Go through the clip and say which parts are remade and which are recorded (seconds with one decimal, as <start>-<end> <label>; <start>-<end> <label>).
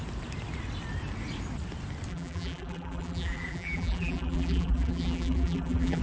0.0-2.1 recorded; 2.1-6.0 remade